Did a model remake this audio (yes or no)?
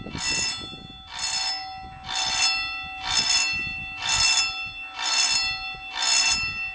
no